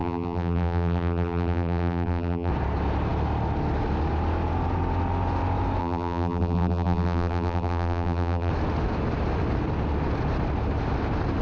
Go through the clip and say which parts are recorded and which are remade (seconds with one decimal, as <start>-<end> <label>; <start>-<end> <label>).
0.0-2.5 remade; 2.5-5.8 recorded; 5.8-8.5 remade; 8.5-11.4 recorded